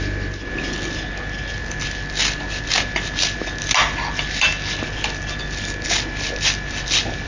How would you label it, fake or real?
real